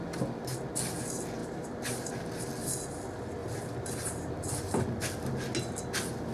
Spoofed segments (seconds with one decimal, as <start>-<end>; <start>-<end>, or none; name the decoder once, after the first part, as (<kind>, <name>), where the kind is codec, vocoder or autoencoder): 1.4-2.1 (vocoder, BigVGAN v2); 3.4-4.3